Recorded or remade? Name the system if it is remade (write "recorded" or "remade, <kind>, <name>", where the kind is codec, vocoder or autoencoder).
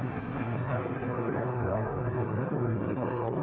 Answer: remade, codec, SNAC